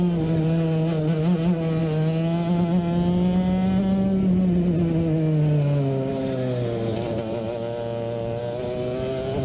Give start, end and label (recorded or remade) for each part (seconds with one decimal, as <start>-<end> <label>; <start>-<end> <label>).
0.0-9.4 recorded